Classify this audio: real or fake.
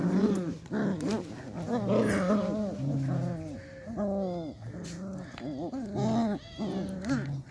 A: real